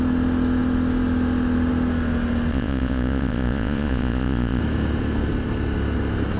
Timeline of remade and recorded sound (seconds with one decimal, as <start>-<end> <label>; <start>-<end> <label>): 0.0-2.5 recorded; 2.5-4.6 remade; 4.6-6.4 recorded